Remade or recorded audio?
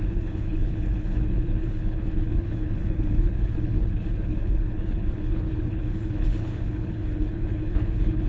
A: remade